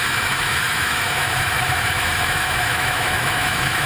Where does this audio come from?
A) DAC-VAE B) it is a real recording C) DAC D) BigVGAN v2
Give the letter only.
A